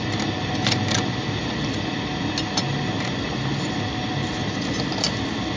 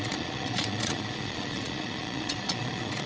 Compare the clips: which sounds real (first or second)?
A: first